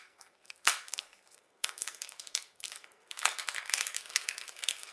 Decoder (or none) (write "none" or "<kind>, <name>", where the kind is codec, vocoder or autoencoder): codec, SNAC